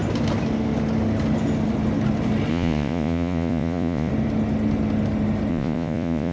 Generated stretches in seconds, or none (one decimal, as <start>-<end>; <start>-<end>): 2.5-4.1; 5.5-6.3